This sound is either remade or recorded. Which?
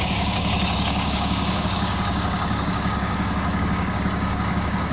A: remade